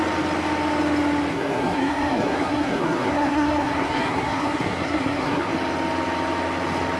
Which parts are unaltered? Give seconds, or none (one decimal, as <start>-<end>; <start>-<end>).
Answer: 0.0-1.3; 5.5-7.0